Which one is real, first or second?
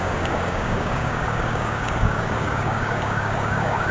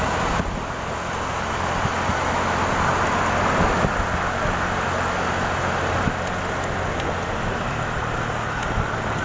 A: second